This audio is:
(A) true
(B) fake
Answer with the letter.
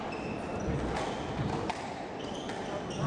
A